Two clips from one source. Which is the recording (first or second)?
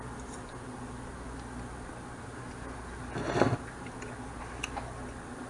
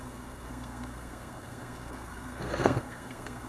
first